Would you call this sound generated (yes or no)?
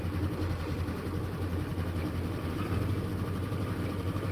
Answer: no